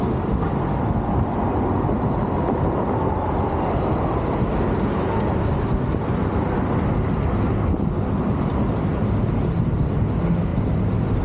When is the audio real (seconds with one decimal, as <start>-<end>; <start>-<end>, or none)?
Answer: 0.0-11.2